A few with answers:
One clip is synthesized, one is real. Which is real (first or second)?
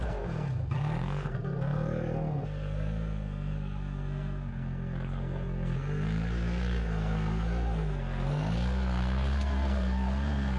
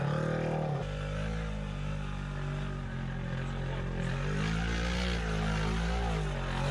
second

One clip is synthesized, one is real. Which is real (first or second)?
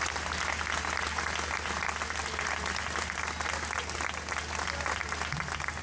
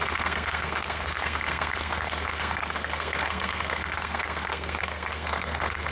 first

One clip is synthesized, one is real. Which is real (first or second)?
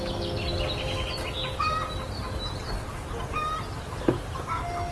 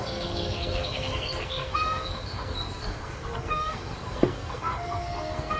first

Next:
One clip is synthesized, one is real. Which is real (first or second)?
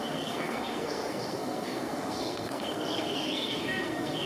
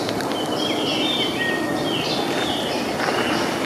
second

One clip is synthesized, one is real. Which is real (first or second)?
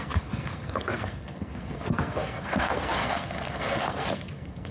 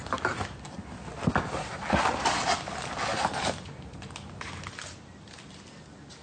second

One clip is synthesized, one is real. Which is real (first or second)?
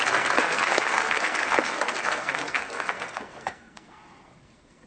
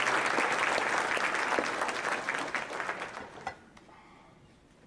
second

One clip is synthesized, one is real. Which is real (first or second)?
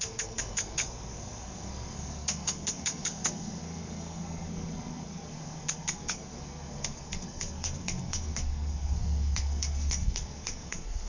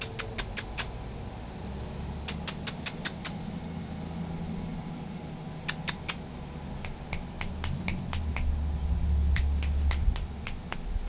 second